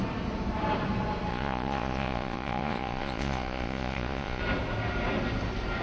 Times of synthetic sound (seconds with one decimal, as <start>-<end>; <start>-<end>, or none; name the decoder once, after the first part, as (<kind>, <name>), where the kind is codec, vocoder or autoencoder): 1.3-4.4 (vocoder, Vocos)